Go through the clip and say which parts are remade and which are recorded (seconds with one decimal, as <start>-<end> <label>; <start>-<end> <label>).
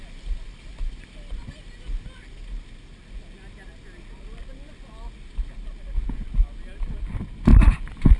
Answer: 0.0-8.2 recorded